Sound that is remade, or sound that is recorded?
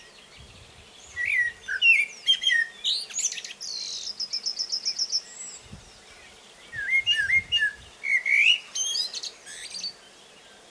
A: recorded